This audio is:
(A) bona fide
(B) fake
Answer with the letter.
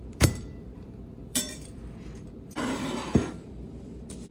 B